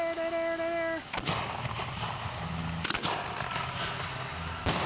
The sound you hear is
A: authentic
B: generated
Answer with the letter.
A